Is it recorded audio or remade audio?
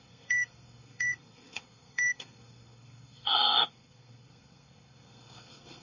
remade